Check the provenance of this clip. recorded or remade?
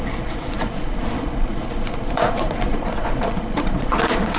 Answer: remade